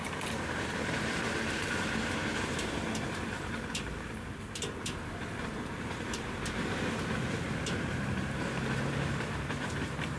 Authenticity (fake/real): fake